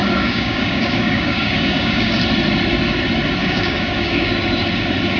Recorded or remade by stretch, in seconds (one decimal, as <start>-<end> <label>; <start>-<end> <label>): 0.0-2.2 remade; 2.2-3.4 recorded; 3.4-4.3 remade; 4.3-5.2 recorded